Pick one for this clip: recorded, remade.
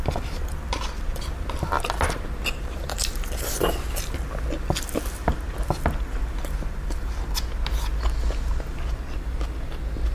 recorded